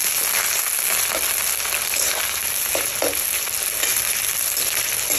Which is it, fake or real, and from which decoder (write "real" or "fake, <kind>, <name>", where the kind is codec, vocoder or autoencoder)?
real